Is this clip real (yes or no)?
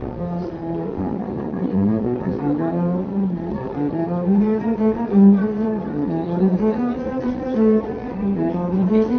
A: no